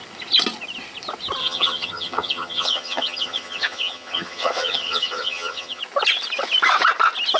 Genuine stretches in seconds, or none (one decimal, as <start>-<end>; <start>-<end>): 0.0-1.4; 5.8-7.4

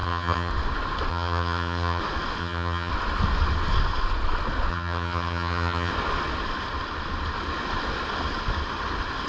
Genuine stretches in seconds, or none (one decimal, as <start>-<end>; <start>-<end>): 0.5-1.1; 2.0-2.4; 2.9-4.7; 5.9-9.3

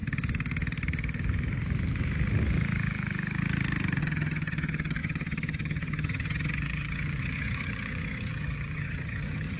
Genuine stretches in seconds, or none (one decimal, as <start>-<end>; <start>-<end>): 0.0-4.0

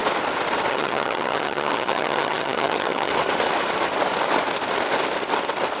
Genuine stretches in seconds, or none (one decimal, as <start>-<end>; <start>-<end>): 0.0-0.7; 3.1-5.8

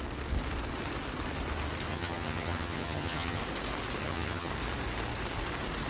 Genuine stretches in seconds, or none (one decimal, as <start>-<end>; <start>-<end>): 0.0-1.9; 3.4-4.0; 4.5-5.9